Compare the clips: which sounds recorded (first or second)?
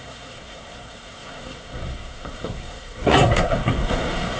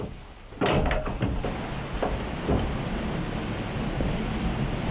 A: second